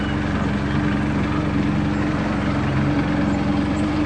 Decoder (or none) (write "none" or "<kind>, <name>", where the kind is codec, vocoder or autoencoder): none